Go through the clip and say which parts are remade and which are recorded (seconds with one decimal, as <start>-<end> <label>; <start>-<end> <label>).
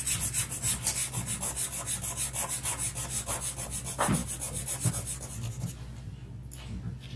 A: 0.0-7.2 recorded